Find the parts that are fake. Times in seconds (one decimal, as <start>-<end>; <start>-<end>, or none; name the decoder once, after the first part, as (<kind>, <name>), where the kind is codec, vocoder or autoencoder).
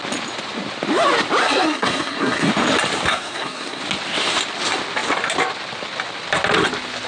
1.4-2.5 (codec, SNAC); 3.1-3.8